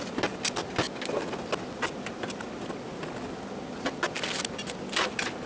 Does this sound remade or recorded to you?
recorded